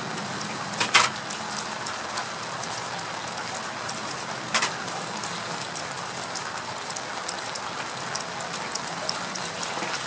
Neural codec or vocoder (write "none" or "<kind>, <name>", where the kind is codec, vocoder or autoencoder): none